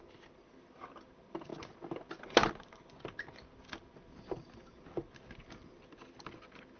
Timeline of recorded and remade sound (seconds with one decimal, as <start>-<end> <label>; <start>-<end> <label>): 0.0-6.8 recorded